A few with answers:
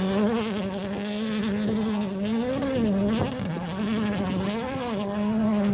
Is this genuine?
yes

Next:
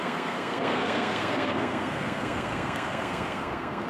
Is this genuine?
no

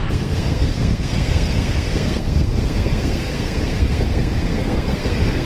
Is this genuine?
no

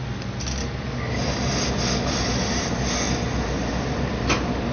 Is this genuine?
yes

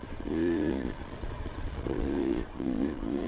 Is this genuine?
no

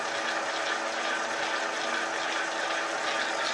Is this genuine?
yes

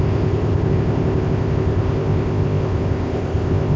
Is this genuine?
no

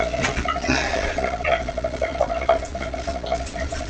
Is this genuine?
no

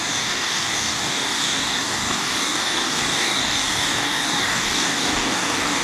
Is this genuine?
no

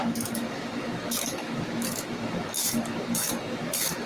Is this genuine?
no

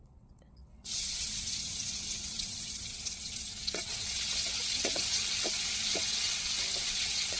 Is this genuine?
no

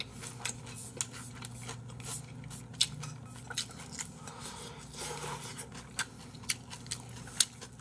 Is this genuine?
yes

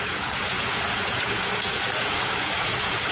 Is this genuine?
no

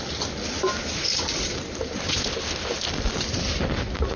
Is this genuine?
yes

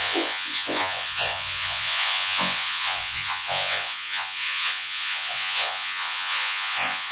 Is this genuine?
no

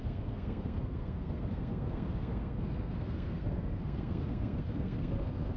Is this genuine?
no